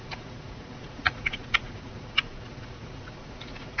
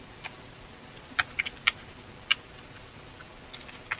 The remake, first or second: first